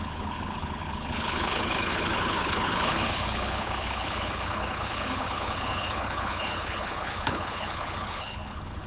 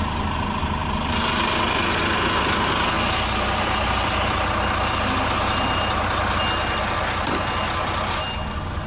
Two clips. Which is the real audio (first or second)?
second